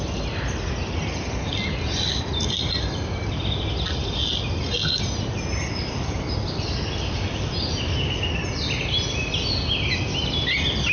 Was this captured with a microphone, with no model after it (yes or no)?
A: yes